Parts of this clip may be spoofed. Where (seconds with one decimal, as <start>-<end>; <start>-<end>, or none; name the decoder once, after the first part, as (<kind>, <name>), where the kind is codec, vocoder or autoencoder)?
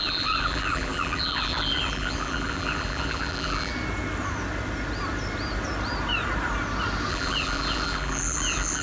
0.0-3.7 (vocoder, BigVGAN v2); 7.1-8.8